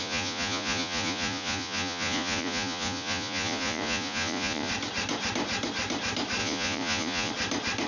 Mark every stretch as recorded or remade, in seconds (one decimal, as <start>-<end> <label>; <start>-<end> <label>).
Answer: 0.0-4.7 remade; 4.7-6.4 recorded; 6.4-7.3 remade; 7.3-7.9 recorded